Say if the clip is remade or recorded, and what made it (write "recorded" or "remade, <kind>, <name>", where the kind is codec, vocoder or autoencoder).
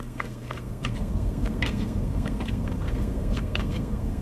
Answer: remade, codec, SNAC